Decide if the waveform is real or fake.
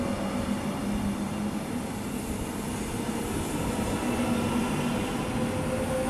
real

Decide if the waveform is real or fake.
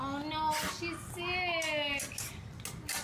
real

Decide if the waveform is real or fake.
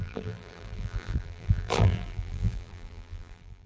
fake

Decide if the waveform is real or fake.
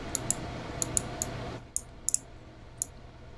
real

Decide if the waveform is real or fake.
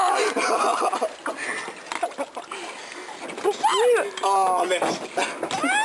real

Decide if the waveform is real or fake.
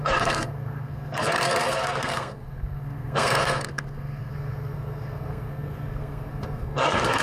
fake